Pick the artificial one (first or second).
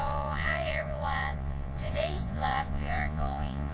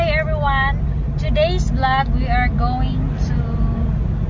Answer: first